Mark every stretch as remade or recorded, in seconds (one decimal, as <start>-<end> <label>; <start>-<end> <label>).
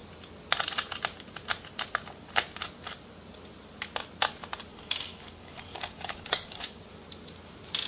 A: 0.0-4.7 recorded; 4.7-6.8 remade; 6.8-7.9 recorded